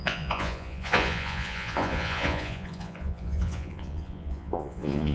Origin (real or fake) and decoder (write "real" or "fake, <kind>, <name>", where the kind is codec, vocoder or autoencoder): fake, vocoder, Vocos